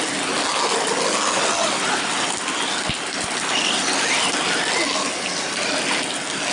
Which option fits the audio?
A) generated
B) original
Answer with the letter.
B